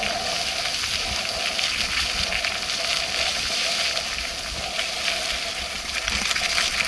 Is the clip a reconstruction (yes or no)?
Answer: no